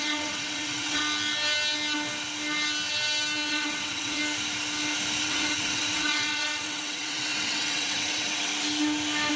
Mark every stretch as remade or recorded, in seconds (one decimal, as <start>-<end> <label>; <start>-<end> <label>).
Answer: 0.0-1.0 remade; 1.0-3.5 recorded; 3.5-4.2 remade; 4.2-5.2 recorded; 5.2-8.5 remade; 8.5-9.4 recorded